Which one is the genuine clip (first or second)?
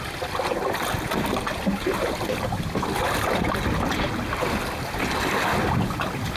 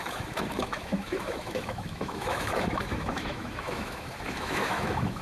first